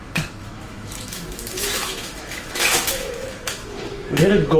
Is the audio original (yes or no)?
no